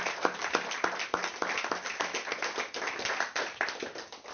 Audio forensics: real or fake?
real